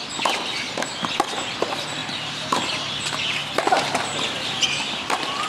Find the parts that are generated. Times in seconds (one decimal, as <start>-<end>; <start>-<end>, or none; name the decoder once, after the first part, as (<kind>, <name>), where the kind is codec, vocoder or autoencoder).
2.0-2.6 (vocoder, BigVGAN v2); 3.4-5.5

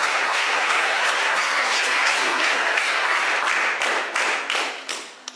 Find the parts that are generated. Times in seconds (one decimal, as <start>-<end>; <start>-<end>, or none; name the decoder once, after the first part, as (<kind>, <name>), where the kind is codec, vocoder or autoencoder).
0.0-3.2 (codec, SNAC)

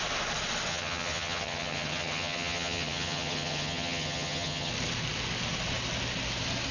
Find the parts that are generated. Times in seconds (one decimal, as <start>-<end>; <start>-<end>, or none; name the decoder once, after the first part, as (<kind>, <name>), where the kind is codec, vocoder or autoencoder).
0.7-4.7 (vocoder, HiFi-GAN)